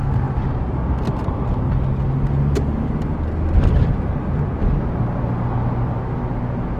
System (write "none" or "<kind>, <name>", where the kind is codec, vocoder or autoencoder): none